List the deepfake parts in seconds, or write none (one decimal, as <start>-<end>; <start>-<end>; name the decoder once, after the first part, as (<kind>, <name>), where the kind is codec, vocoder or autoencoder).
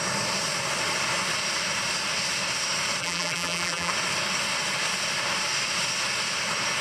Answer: 3.0-3.9 (vocoder, BigVGAN v2)